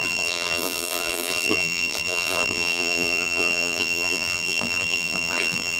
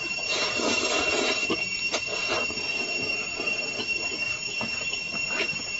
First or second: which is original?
second